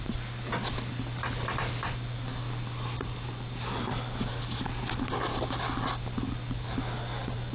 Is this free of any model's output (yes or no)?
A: yes